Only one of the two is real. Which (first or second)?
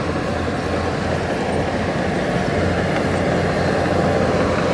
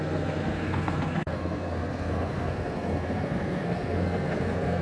first